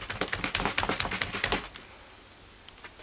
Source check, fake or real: real